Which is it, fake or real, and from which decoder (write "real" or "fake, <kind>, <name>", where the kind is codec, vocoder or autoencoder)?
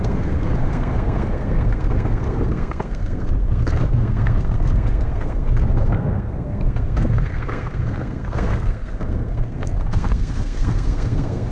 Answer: fake, codec, SNAC